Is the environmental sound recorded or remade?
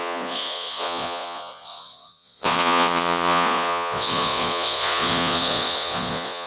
remade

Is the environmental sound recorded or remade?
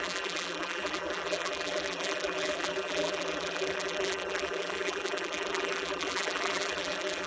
remade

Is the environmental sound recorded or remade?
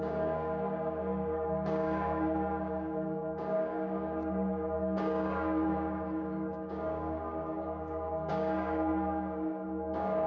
remade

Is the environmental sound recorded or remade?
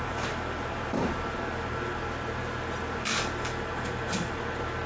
recorded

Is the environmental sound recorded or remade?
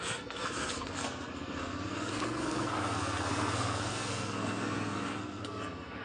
remade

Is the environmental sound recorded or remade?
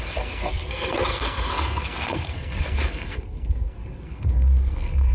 remade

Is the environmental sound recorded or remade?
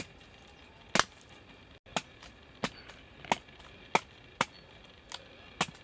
recorded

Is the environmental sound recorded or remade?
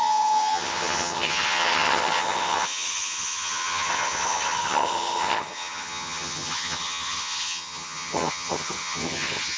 remade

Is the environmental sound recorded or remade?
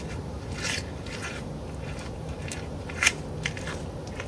recorded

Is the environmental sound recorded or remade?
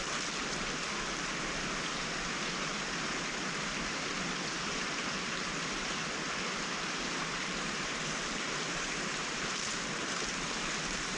remade